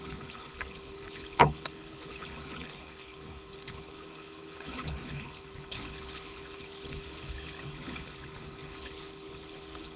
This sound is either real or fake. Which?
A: fake